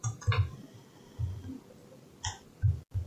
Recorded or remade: recorded